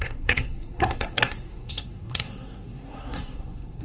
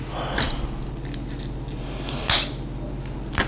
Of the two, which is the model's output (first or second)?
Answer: first